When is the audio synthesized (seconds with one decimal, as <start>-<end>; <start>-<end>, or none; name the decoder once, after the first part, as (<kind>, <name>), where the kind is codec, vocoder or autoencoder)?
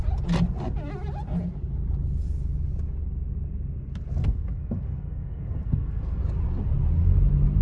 4.2-6.2 (codec, SNAC)